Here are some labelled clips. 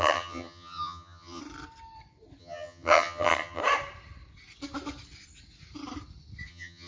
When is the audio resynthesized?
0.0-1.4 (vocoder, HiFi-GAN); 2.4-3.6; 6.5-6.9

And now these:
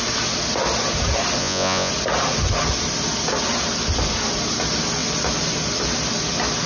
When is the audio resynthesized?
1.4-1.9 (vocoder, Vocos)

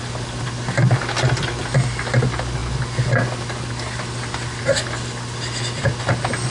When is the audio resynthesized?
none

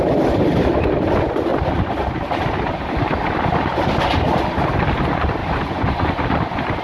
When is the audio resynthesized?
5.4-6.2 (vocoder, Vocos)

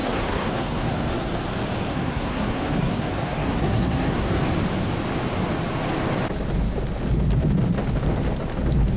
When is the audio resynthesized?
0.0-1.3 (codec, SNAC); 1.9-4.4